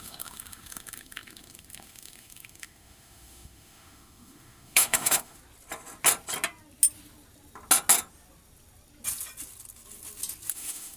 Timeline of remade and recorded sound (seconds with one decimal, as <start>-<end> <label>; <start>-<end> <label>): 0.0-5.4 remade; 5.4-10.5 recorded; 10.5-11.0 remade